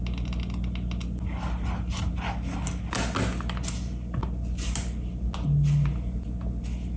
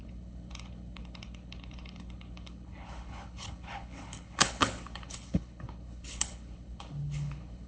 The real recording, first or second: first